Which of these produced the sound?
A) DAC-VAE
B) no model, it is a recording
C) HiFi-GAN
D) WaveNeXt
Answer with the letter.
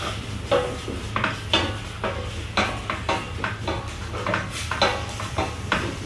B